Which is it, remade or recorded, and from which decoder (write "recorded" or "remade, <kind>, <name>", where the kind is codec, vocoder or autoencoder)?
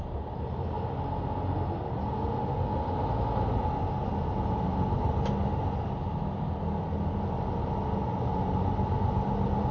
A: recorded